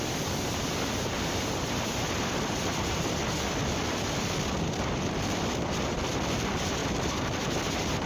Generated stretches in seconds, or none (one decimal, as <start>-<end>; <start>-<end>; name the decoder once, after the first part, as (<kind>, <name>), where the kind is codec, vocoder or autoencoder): 0.0-6.8 (vocoder, BigVGAN v2)

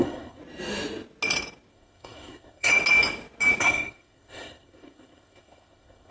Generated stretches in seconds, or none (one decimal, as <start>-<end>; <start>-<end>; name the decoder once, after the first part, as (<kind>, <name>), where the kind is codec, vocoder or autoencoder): 0.0-0.4 (codec, SNAC); 1.7-2.7; 3.6-6.1

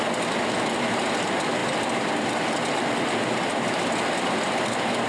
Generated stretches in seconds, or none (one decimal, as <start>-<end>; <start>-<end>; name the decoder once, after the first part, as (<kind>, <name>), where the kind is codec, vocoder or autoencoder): none

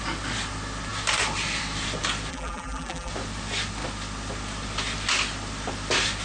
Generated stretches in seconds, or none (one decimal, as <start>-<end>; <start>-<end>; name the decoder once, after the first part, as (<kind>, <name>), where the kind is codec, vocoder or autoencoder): 2.3-3.1 (vocoder, BigVGAN v2)

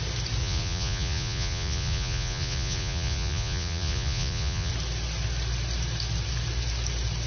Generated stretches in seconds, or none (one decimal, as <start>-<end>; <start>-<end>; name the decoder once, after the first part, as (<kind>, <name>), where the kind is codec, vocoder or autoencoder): 0.4-4.7 (vocoder, Vocos)

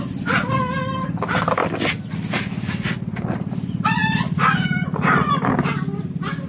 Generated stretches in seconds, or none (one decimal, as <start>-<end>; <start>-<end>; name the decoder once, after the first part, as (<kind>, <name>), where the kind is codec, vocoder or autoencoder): none

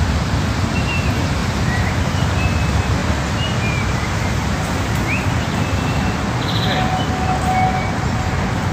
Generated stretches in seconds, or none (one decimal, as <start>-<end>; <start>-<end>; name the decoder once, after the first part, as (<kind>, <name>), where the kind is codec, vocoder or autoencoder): 1.4-2.4 (vocoder, BigVGAN v2)